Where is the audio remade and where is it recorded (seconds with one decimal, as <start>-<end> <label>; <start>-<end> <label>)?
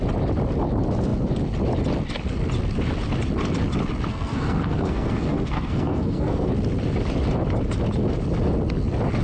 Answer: 0.0-4.1 recorded; 4.1-6.5 remade; 6.5-9.2 recorded